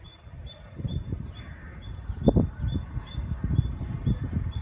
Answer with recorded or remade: recorded